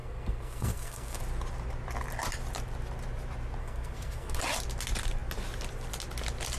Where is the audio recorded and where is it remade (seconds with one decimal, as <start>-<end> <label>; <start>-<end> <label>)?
0.0-1.2 remade; 1.2-3.6 recorded; 3.6-4.4 remade; 4.4-6.6 recorded

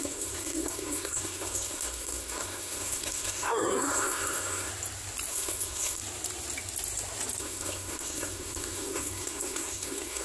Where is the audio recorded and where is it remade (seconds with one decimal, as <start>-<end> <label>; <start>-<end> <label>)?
0.0-4.7 remade; 4.7-5.3 recorded; 5.3-6.0 remade; 6.0-7.4 recorded; 7.4-10.2 remade